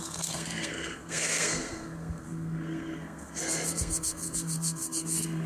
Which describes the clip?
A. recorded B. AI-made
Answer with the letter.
B